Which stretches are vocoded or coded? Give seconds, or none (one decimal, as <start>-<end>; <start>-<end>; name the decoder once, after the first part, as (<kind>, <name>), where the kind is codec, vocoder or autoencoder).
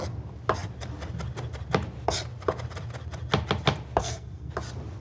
4.0-4.5 (codec, SNAC)